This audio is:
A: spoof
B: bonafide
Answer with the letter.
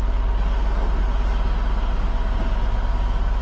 B